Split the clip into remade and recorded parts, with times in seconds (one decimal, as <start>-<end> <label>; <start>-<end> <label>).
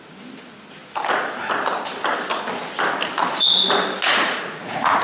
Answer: 0.0-4.1 recorded; 4.1-5.0 remade